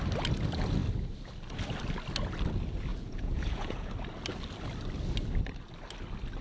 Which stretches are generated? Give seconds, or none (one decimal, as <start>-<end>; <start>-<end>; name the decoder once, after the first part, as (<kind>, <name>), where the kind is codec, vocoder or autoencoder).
2.9-3.9 (vocoder, Vocos)